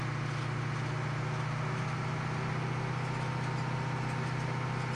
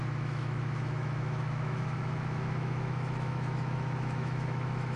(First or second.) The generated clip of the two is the second